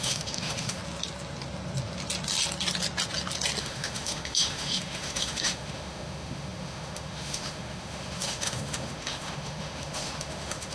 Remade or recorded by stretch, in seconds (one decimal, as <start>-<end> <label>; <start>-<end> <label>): 0.0-0.8 remade; 0.8-3.6 recorded; 3.6-10.7 remade